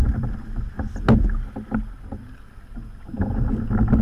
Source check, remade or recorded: recorded